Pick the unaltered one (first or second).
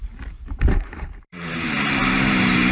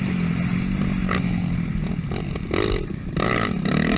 second